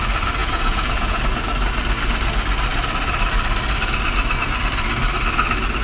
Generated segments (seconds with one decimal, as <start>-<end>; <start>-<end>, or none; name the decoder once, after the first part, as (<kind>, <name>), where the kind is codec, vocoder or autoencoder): 0.4-1.2 (vocoder, Vocos)